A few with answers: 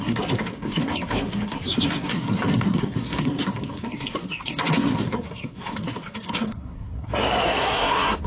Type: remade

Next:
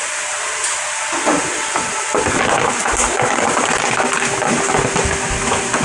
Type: recorded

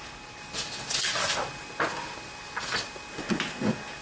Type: recorded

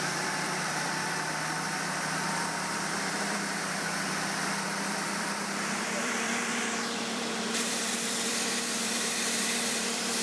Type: remade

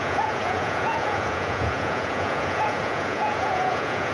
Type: remade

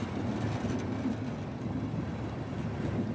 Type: recorded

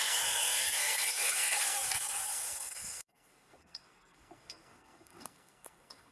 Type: remade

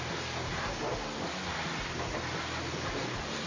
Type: recorded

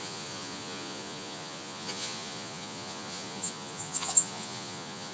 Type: remade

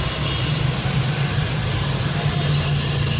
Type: recorded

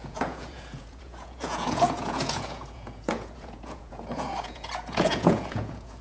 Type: remade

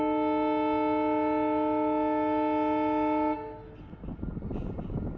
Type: recorded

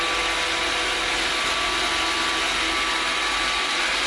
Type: recorded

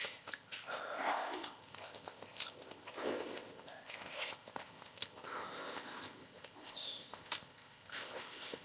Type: remade